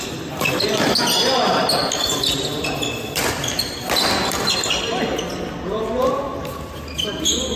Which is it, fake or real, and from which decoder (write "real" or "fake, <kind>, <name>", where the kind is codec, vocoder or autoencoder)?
real